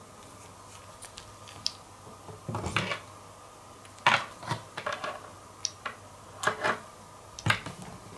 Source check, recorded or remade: recorded